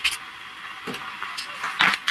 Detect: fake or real real